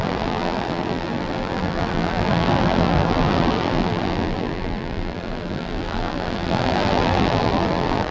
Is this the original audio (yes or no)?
no